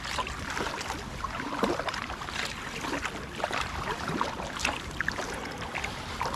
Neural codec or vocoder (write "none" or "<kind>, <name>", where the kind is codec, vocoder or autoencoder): none